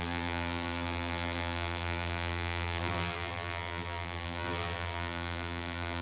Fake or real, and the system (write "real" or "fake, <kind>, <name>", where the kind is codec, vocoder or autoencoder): fake, vocoder, BigVGAN v2